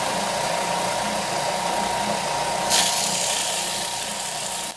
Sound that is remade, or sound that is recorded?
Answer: recorded